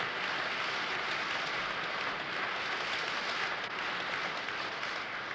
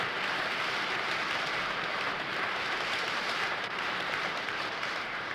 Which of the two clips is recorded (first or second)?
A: first